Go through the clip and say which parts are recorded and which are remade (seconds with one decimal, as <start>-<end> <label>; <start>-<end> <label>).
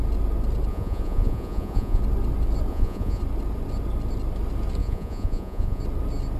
0.0-0.7 recorded; 0.7-2.0 remade; 2.0-2.7 recorded; 2.7-3.2 remade; 3.2-4.8 recorded; 4.8-5.8 remade; 5.8-6.4 recorded